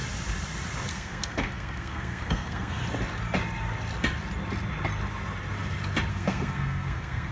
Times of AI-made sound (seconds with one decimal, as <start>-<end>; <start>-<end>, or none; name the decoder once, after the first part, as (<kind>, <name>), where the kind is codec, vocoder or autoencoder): 0.9-2.8 (codec, SNAC); 6.1-7.3